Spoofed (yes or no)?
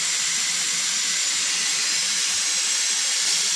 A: no